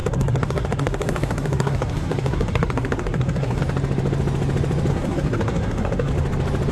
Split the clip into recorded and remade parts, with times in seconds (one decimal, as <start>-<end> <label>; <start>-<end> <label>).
0.0-3.6 remade; 3.6-4.9 recorded; 4.9-6.1 remade; 6.1-6.7 recorded